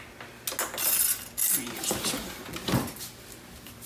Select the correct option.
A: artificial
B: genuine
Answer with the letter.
B